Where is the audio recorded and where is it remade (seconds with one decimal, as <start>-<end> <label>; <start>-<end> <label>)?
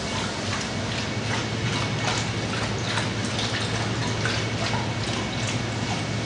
0.0-6.3 recorded